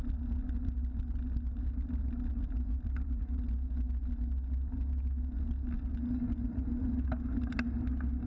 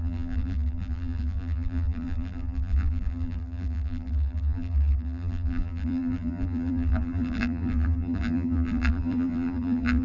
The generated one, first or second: second